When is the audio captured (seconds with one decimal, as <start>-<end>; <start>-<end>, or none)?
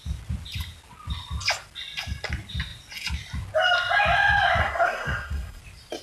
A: 0.0-4.6; 5.6-6.0